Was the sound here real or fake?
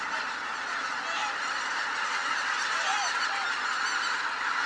real